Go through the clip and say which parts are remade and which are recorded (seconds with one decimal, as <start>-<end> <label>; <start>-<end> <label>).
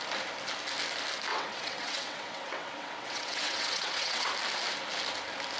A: 0.0-1.3 recorded; 1.3-4.3 remade; 4.3-5.6 recorded